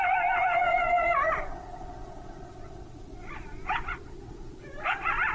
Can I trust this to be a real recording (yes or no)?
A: no